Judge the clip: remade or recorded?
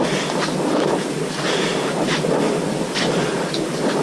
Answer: recorded